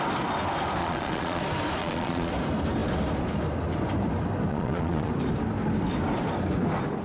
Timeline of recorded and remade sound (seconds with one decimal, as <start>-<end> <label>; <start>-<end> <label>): 0.0-0.8 recorded; 0.8-1.4 remade; 1.4-1.8 recorded; 1.8-2.3 remade; 2.3-4.5 recorded; 4.5-5.1 remade; 5.1-7.0 recorded